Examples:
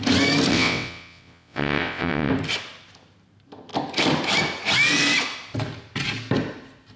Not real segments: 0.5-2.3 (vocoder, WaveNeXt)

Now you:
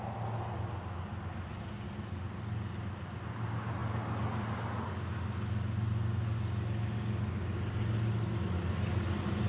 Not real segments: none

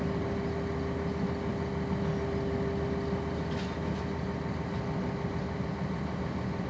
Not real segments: none

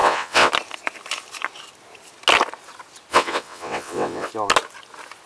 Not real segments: 0.0-0.5 (vocoder, WaveNeXt); 3.1-4.3

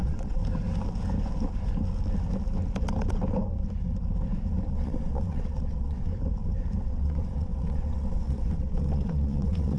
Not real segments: 0.0-0.4 (vocoder, WaveNeXt); 4.7-6.1; 6.8-9.8

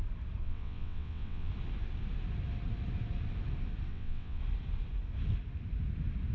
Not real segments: 0.4-1.5 (vocoder, WaveNeXt); 3.9-4.4